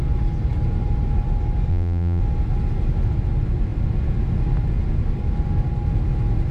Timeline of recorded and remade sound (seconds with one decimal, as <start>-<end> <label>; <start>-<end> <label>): 0.0-1.7 recorded; 1.7-2.2 remade; 2.2-6.5 recorded